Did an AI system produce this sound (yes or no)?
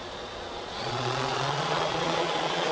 yes